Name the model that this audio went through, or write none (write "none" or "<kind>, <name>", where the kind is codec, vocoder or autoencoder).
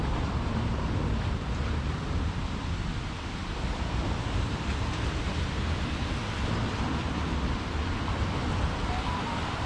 vocoder, BigVGAN v2